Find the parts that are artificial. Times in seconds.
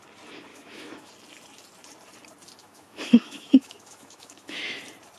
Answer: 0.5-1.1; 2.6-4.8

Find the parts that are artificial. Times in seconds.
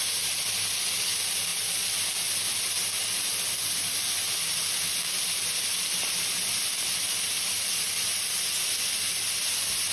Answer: none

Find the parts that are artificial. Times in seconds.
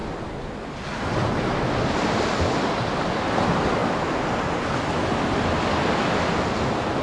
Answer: none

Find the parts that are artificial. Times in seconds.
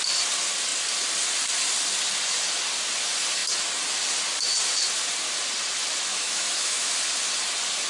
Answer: 6.1-6.9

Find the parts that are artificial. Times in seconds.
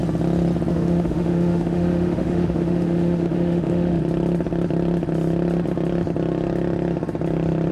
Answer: 0.7-4.0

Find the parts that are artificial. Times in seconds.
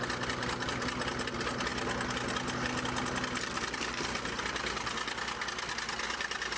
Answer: none